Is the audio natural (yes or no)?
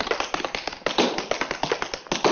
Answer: yes